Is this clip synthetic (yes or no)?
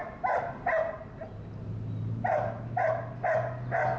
no